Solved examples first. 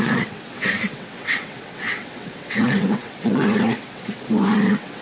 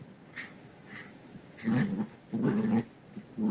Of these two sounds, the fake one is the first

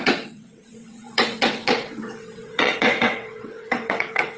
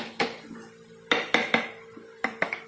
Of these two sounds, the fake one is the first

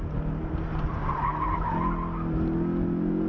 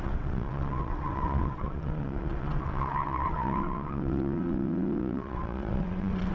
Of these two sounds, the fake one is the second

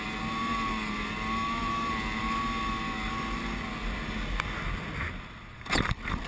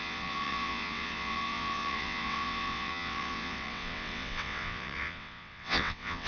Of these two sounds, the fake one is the second